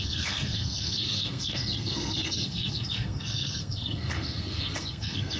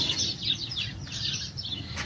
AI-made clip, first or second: first